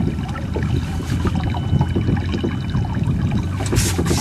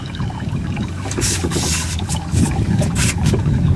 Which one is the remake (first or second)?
second